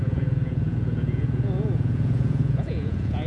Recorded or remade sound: remade